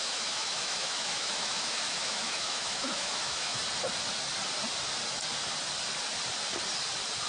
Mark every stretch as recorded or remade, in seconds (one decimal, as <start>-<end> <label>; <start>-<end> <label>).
0.0-3.6 remade; 3.6-7.3 recorded

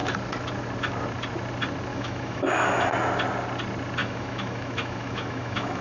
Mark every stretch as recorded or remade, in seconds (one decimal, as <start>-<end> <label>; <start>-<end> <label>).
0.0-1.9 recorded; 1.9-2.7 remade; 2.7-4.0 recorded; 4.0-5.8 remade

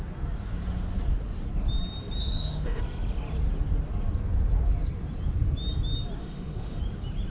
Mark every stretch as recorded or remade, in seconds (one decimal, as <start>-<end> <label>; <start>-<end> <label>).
0.0-2.2 recorded; 2.2-2.8 remade; 2.8-6.2 recorded; 6.2-6.8 remade; 6.8-7.3 recorded

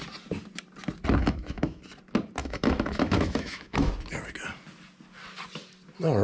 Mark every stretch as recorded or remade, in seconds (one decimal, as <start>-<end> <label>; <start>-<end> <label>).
0.0-1.2 recorded; 1.2-1.8 remade; 1.8-2.4 recorded; 2.4-3.9 remade; 3.9-6.2 recorded

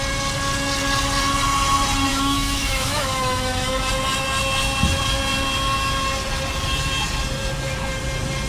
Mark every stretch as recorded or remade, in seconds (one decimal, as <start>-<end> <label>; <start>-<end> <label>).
0.0-2.1 recorded; 2.1-3.9 remade; 3.9-8.5 recorded

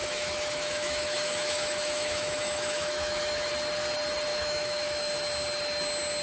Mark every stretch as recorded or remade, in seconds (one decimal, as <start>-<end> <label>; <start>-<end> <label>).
0.0-3.5 remade; 3.5-4.3 recorded; 4.3-5.1 remade; 5.1-6.2 recorded

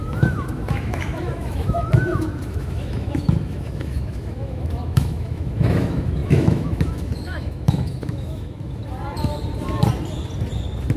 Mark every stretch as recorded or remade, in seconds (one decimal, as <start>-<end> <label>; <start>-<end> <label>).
0.0-8.8 remade; 8.8-11.0 recorded

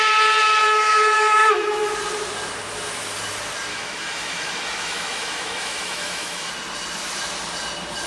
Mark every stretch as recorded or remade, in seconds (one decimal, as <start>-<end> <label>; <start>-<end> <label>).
0.0-0.6 recorded; 0.6-1.9 remade; 1.9-3.7 recorded; 3.7-6.5 remade; 6.5-8.1 recorded